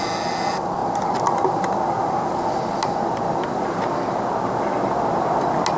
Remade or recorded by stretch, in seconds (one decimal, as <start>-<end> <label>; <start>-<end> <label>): 0.0-5.8 recorded